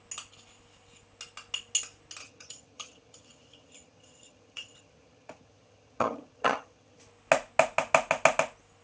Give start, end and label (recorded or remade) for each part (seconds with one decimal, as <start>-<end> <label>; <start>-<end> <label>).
0.0-2.2 recorded; 2.2-7.0 remade; 7.0-8.8 recorded